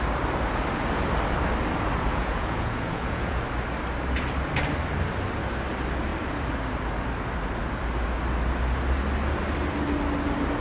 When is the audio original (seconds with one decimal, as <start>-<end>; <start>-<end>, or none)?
0.0-2.1; 3.4-10.6